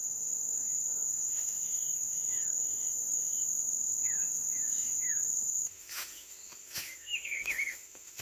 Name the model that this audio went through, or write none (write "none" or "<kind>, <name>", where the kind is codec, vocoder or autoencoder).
autoencoder, DAC-VAE